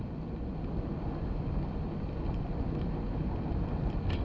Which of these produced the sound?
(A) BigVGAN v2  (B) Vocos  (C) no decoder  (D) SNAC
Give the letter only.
C